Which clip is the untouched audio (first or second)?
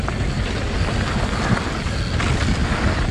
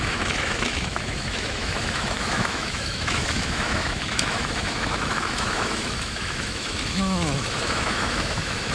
first